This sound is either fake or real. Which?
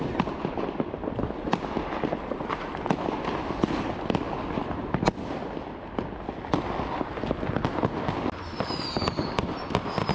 real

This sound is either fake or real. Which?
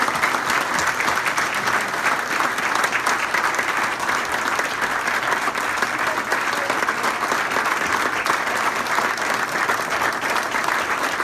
real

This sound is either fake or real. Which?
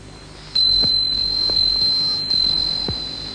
real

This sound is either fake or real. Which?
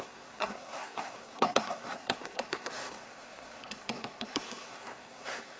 fake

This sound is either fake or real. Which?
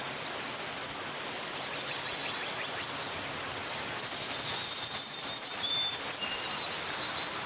real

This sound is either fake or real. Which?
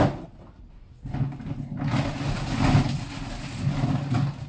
real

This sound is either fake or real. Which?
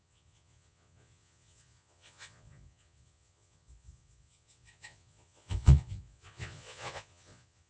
fake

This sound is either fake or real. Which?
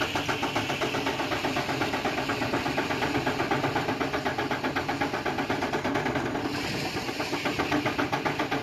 real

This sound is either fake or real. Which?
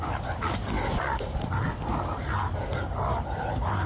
real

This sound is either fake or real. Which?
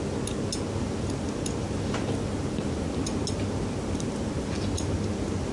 real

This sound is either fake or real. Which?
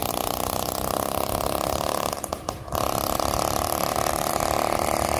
fake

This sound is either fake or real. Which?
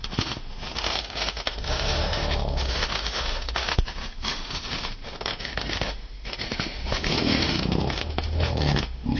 fake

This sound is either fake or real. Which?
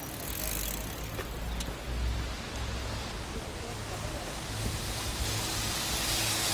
real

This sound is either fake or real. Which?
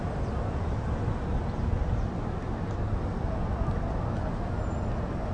real